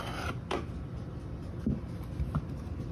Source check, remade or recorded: recorded